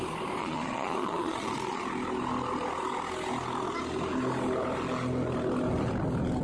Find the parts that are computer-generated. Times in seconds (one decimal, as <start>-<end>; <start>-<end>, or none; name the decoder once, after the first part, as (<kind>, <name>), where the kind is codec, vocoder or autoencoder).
0.4-1.8 (vocoder, Vocos)